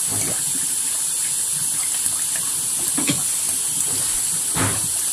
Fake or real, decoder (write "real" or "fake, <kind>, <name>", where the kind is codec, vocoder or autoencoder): real